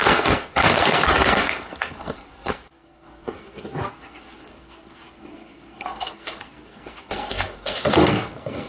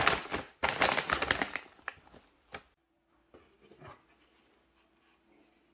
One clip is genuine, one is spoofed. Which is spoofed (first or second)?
first